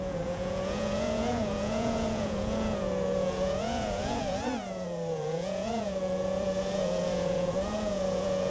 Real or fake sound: fake